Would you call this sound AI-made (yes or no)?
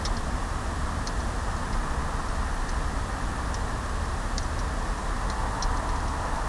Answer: no